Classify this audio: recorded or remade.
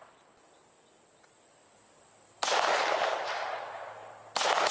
recorded